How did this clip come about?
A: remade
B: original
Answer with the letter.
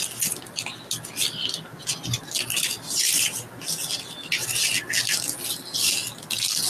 B